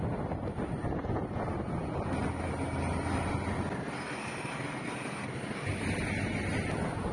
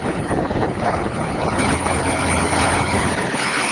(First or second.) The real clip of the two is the first